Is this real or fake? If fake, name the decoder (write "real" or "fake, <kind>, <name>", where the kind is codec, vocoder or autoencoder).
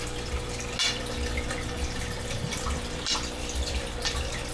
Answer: real